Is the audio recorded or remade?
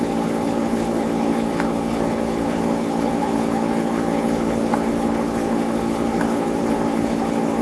remade